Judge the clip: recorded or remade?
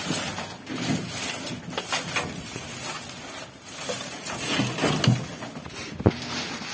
recorded